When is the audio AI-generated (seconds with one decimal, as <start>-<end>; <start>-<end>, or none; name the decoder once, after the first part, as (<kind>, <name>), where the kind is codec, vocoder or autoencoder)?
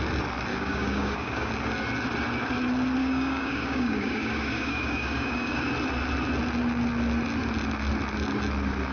0.5-1.5 (codec, DAC); 3.0-5.7